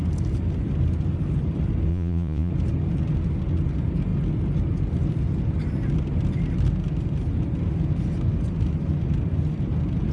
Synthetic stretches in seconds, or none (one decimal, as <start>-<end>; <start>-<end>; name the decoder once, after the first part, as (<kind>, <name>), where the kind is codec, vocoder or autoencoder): 1.9-2.5 (vocoder, Vocos)